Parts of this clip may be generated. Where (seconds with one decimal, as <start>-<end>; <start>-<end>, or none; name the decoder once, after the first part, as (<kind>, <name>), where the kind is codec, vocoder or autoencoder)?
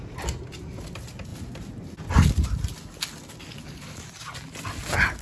none